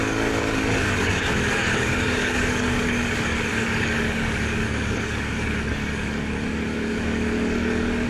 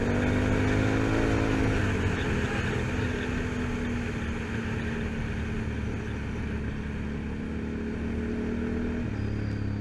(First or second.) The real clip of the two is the second